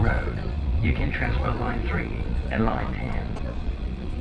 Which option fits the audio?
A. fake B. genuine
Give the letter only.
A